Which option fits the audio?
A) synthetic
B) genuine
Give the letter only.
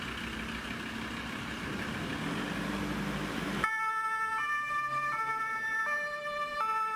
B